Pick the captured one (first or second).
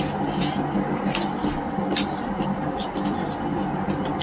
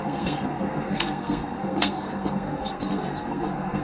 first